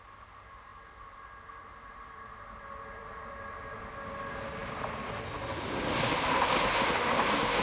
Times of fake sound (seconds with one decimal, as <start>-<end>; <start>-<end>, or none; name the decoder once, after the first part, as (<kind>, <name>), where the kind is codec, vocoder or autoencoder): none